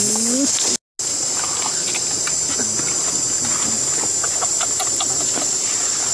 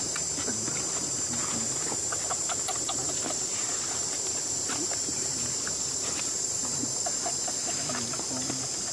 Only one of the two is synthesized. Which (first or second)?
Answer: second